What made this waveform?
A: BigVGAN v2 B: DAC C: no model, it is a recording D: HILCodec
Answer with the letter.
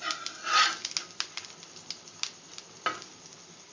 C